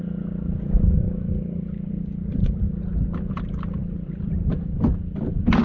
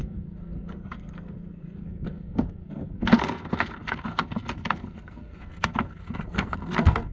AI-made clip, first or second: second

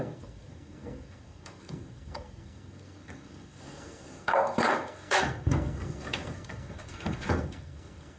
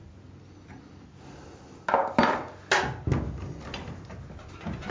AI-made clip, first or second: first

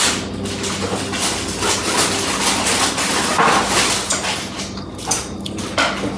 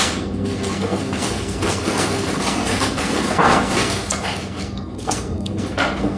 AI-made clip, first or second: second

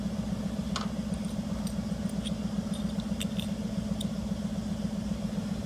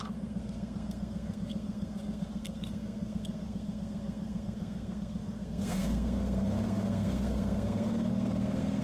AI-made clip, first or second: second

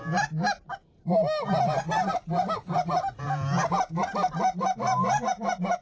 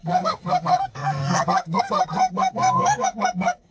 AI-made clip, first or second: second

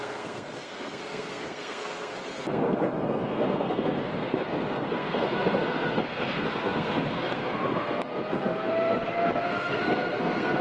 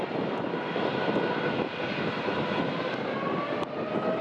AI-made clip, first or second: first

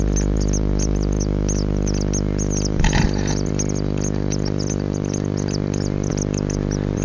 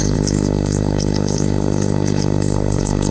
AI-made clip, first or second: second